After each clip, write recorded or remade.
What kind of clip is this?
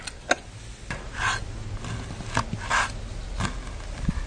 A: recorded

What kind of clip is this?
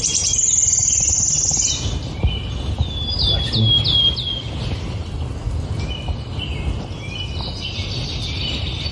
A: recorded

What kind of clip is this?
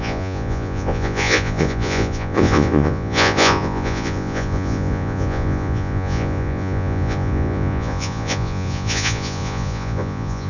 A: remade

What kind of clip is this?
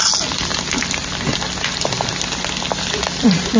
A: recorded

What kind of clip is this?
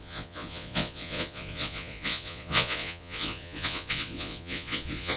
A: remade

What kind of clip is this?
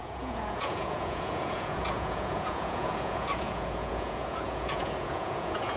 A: remade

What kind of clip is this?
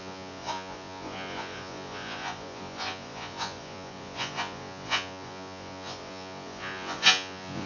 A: remade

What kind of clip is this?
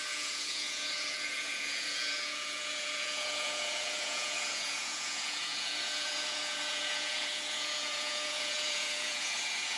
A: remade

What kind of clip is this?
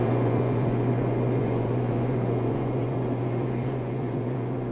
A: remade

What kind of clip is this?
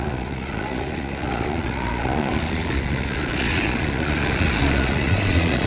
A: remade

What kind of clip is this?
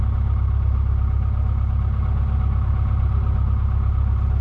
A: recorded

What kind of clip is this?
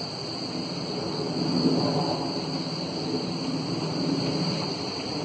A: recorded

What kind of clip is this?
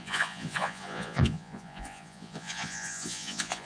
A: remade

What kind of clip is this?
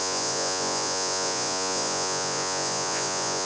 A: remade